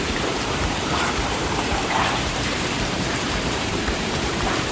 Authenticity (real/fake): fake